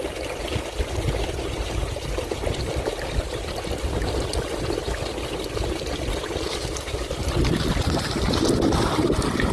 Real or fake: real